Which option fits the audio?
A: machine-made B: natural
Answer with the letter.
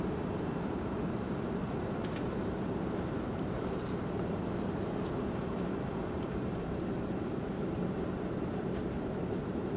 A